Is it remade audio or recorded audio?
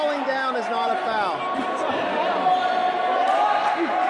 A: recorded